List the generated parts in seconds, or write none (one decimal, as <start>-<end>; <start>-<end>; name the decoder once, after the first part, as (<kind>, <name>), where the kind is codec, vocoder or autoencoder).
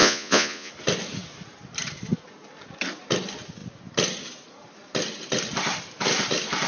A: 0.0-0.7 (vocoder, Vocos)